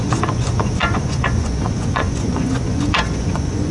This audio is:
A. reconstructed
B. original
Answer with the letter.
A